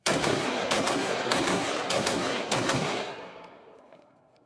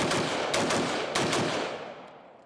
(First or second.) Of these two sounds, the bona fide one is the second